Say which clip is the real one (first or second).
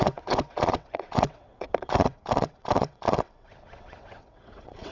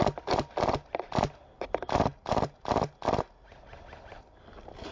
second